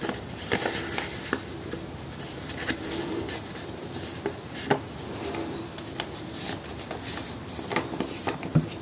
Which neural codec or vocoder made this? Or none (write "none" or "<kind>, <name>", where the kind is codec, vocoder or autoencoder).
none